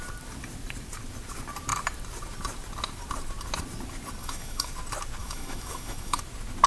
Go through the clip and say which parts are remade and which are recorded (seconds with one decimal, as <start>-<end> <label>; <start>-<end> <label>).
0.0-4.2 recorded; 4.2-4.7 remade; 4.7-5.2 recorded; 5.2-6.2 remade; 6.2-6.7 recorded